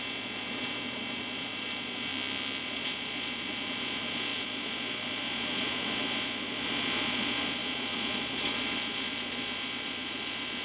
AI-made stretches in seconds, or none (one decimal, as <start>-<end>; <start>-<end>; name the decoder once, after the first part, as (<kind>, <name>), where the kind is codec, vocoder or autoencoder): 0.0-2.1 (vocoder, Vocos); 2.6-10.6